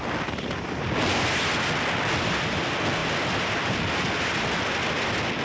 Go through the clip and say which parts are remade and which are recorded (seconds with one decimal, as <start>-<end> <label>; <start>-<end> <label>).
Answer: 0.0-5.4 recorded

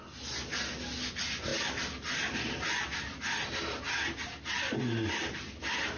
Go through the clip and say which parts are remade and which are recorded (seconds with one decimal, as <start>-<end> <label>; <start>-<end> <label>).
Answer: 0.0-6.0 recorded

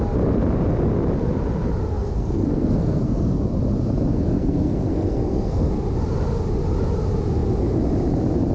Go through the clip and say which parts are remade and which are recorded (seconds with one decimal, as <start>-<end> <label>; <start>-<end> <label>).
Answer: 0.0-1.9 recorded; 1.9-3.4 remade; 3.4-4.1 recorded; 4.1-5.7 remade; 5.7-8.5 recorded

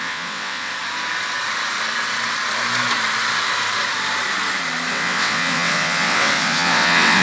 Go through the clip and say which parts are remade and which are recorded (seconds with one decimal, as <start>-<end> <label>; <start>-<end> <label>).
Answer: 0.0-0.7 remade; 0.7-4.9 recorded; 4.9-7.2 remade

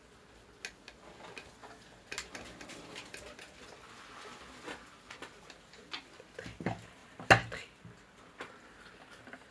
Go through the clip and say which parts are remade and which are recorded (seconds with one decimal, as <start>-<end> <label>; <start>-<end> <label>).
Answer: 0.0-9.5 recorded

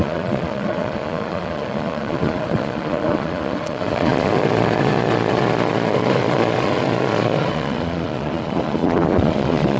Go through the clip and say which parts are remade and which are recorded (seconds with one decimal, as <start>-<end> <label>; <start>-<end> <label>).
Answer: 0.0-9.8 remade

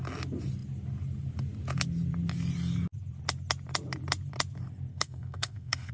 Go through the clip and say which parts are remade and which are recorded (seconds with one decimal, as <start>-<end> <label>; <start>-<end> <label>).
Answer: 0.0-4.9 recorded; 4.9-5.9 remade